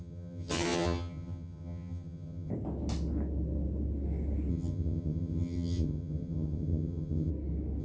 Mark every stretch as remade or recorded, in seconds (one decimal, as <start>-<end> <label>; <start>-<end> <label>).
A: 0.0-2.5 remade; 2.5-4.5 recorded; 4.5-7.3 remade; 7.3-7.8 recorded